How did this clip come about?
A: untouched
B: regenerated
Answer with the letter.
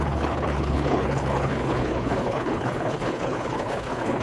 B